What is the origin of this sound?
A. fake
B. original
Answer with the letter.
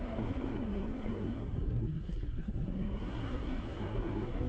A